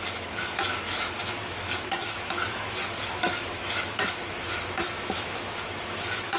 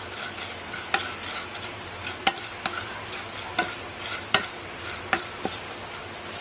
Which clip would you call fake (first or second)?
first